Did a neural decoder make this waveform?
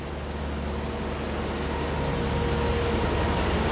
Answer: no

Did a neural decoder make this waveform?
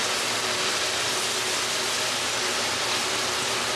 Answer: no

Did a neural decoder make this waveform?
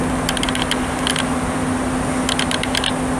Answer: no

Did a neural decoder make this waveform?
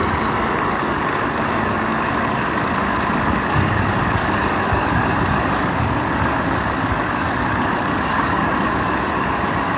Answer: yes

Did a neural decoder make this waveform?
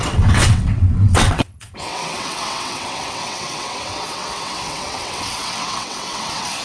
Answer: yes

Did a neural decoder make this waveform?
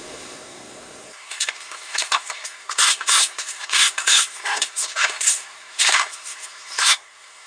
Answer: yes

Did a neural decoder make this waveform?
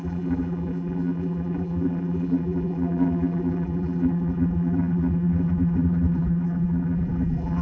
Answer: yes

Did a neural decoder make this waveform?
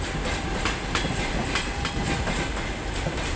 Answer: no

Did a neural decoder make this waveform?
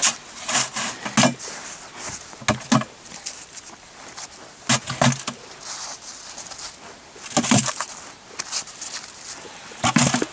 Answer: no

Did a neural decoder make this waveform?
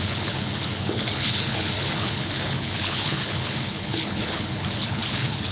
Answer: yes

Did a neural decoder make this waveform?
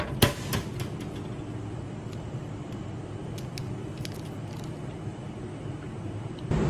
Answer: no